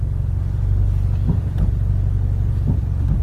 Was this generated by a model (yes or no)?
no